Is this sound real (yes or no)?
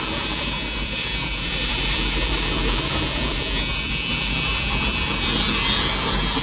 no